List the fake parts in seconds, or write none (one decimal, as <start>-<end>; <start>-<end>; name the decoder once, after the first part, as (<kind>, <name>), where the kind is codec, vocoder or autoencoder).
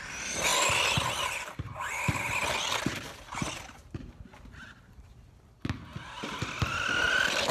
0.5-2.0 (vocoder, BigVGAN v2)